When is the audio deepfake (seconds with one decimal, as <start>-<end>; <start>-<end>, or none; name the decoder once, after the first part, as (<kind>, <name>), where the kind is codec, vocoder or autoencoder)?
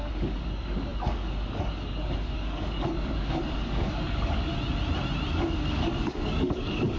0.0-4.5 (codec, DAC); 5.3-7.0